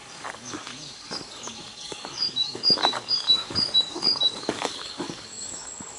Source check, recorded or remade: remade